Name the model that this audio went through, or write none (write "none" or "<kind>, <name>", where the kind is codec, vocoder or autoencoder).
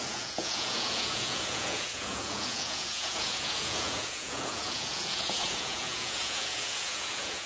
vocoder, Vocos